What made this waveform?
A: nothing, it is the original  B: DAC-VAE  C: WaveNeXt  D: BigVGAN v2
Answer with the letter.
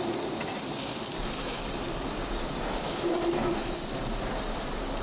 D